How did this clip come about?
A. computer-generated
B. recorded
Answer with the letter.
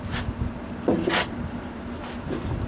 B